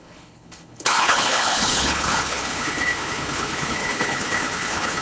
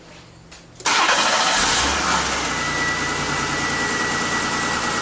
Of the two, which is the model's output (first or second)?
first